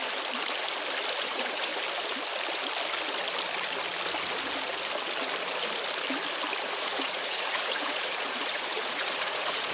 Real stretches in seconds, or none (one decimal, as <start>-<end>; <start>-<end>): 0.0-1.2; 1.7-6.6